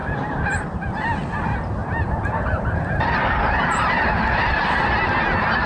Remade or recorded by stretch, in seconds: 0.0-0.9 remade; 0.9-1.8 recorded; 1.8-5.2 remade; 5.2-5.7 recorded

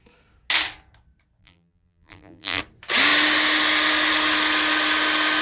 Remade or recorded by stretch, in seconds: 0.0-1.4 recorded; 1.4-2.6 remade; 2.6-5.4 recorded